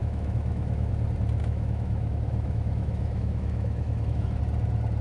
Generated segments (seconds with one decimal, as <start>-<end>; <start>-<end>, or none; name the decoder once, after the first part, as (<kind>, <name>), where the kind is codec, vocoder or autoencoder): 0.0-0.9 (autoencoder, DAC-VAE); 1.4-4.4